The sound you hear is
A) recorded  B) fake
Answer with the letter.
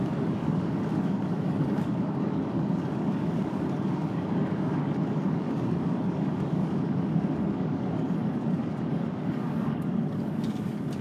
B